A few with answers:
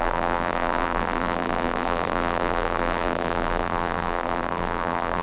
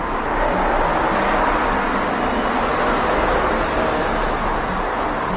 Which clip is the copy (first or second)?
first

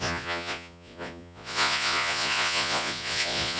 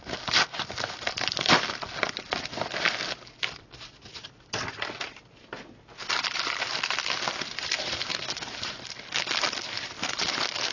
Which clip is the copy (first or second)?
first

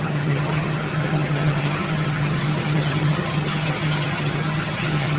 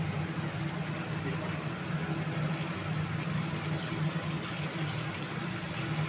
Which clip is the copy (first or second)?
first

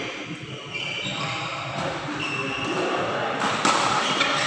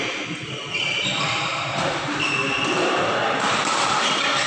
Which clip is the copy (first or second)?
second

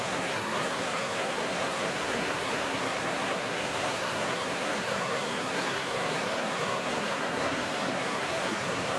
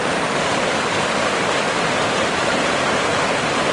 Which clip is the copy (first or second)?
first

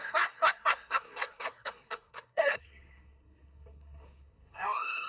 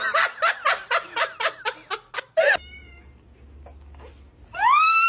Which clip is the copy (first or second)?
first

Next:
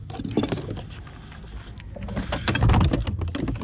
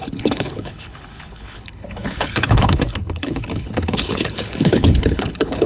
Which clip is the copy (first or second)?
second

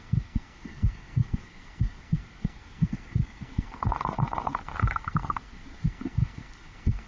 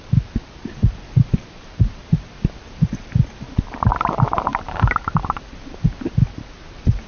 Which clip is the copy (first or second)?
first